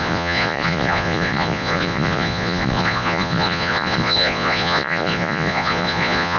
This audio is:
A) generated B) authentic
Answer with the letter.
A